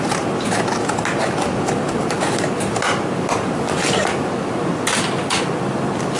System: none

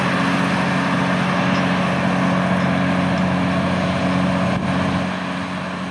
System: none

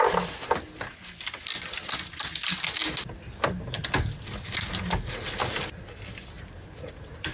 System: none